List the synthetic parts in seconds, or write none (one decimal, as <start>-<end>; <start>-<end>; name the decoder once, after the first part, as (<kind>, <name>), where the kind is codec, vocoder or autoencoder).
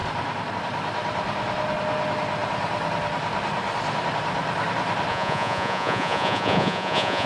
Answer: 5.1-7.3 (vocoder, Vocos)